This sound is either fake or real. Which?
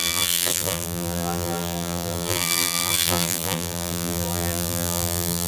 fake